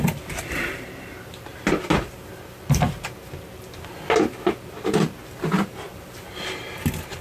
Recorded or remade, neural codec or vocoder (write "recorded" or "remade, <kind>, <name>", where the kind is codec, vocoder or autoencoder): recorded